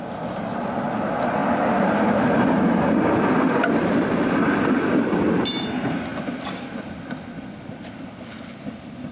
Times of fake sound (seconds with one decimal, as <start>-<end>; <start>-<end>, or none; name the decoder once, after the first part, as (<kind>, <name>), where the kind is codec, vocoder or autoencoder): none

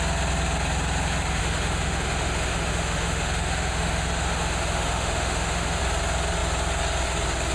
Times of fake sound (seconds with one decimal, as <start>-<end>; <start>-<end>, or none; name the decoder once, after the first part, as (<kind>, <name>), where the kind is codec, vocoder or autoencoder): 1.4-5.8 (autoencoder, DAC-VAE)

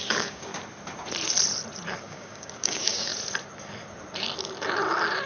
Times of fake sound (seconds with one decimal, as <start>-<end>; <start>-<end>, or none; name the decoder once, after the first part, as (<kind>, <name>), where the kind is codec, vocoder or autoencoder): 0.0-0.5 (codec, DAC); 2.0-3.1

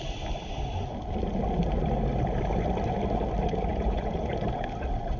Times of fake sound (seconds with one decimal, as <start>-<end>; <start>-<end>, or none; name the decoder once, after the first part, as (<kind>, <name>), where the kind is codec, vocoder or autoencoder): 3.7-4.3 (vocoder, Vocos)